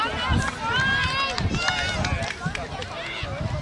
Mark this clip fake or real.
real